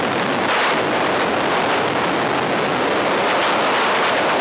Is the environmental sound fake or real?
real